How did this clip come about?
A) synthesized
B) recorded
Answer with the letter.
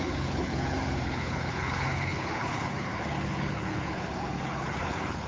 A